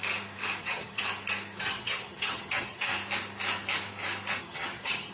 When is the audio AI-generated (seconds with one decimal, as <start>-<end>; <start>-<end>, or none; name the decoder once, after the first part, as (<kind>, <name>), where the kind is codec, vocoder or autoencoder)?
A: 0.6-1.0 (vocoder, HiFi-GAN); 1.6-2.9; 4.4-5.1